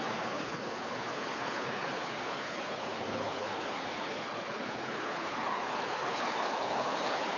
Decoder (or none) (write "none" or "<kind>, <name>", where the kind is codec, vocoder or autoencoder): codec, HILCodec